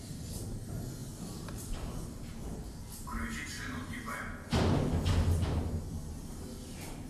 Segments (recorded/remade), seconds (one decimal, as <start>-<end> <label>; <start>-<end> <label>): 0.0-7.1 recorded